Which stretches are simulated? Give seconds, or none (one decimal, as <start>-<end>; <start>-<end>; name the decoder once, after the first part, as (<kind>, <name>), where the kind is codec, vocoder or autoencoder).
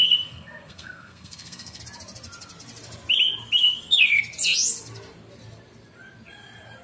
0.0-1.8 (codec, SNAC); 3.6-4.2